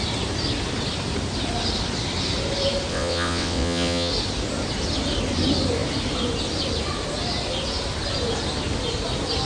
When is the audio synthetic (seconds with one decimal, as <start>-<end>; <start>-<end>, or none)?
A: 2.9-4.1